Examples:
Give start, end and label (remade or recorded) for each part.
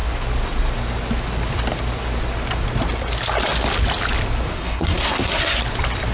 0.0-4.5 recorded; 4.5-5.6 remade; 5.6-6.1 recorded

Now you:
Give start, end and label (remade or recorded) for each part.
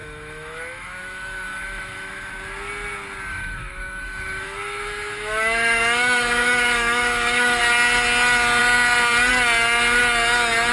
0.0-2.3 remade; 2.3-3.3 recorded; 3.3-7.6 remade; 7.6-10.7 recorded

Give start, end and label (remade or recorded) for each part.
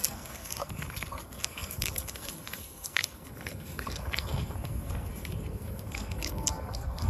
0.0-7.1 remade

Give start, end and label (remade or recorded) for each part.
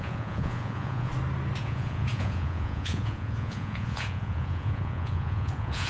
0.0-1.1 remade; 1.1-1.6 recorded; 1.6-5.9 remade